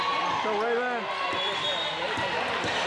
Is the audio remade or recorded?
recorded